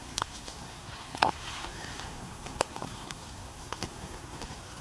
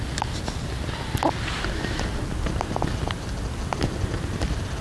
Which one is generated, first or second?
first